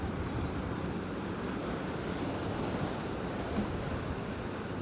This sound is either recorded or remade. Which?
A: recorded